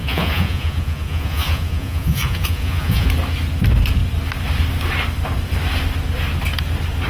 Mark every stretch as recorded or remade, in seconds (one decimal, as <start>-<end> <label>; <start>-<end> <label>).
0.0-3.1 remade; 3.1-7.1 recorded